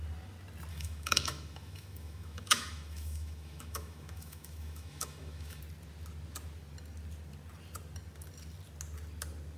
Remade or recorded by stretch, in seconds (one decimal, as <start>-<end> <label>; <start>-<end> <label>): 0.0-0.7 recorded; 0.7-5.6 remade; 5.6-9.6 recorded